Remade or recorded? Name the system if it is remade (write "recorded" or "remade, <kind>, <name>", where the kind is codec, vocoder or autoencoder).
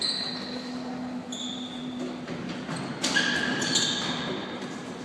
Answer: recorded